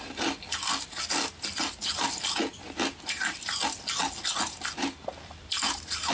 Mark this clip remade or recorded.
recorded